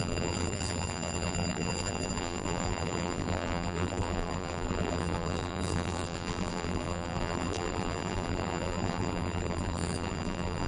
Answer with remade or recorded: remade